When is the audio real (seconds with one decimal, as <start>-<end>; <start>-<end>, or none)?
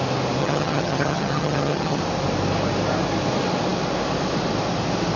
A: 0.0-0.4; 2.0-5.2